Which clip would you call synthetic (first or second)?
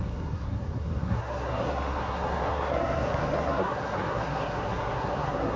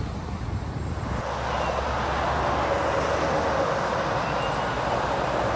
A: first